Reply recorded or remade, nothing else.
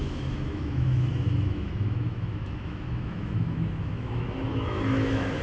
remade